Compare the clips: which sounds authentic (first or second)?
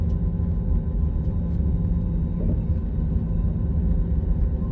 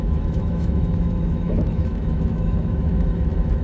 first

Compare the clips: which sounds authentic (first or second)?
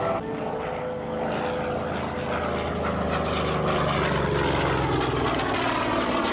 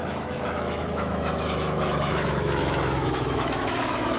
first